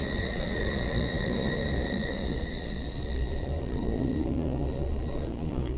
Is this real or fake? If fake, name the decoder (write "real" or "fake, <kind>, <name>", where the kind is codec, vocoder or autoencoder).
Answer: fake, vocoder, Vocos